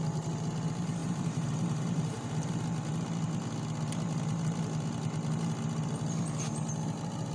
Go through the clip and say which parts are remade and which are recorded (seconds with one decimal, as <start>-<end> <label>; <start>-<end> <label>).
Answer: 0.0-1.0 recorded; 1.0-2.5 remade; 2.5-7.3 recorded